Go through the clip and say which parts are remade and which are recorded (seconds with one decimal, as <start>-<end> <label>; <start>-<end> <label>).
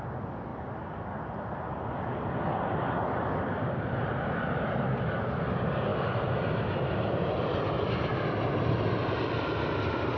0.0-10.2 recorded